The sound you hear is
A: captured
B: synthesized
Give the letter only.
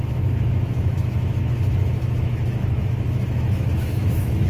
B